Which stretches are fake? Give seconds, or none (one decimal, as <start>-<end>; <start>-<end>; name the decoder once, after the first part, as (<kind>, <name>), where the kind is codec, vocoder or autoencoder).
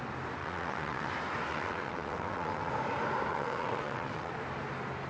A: 0.4-1.1 (vocoder, WaveNeXt); 1.5-2.7; 3.3-4.3